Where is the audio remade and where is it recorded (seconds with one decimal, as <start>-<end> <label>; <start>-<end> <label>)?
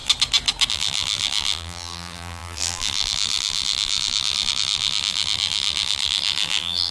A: 0.0-0.7 recorded; 0.7-6.9 remade